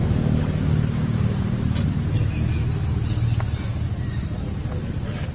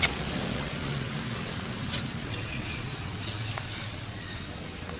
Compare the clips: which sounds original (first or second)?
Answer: first